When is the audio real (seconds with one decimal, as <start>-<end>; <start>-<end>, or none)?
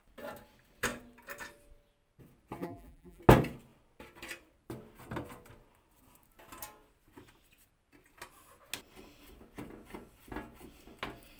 0.0-2.6; 3.2-11.4